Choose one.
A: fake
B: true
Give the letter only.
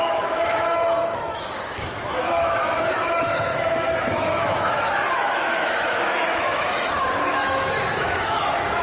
A